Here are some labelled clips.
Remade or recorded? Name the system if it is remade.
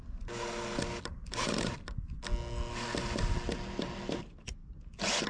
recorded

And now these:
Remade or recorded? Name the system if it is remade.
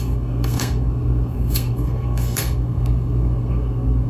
remade, codec, SNAC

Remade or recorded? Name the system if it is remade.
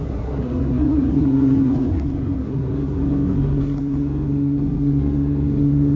remade, codec, SNAC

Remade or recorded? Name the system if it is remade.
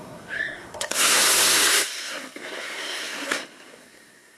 remade, codec, SNAC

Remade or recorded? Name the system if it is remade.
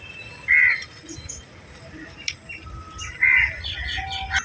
recorded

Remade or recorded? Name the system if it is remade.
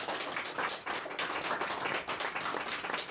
recorded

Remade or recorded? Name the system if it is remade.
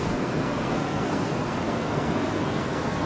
remade, codec, SNAC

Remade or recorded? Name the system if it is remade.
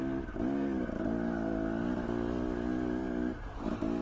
recorded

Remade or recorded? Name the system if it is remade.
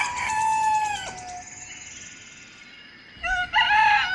recorded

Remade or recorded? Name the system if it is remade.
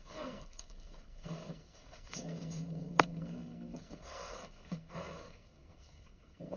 remade, codec, SNAC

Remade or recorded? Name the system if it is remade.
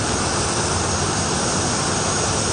recorded